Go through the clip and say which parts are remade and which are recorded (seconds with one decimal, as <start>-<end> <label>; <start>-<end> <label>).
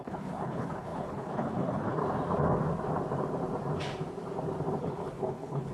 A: 0.0-2.0 remade; 2.0-4.8 recorded; 4.8-5.7 remade